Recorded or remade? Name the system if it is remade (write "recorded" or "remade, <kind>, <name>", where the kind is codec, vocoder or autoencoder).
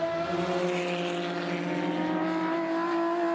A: recorded